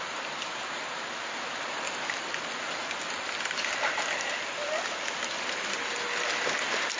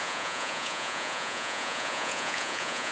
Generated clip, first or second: second